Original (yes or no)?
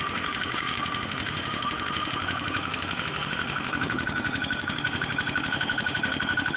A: no